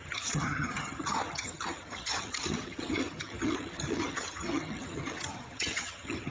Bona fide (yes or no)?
no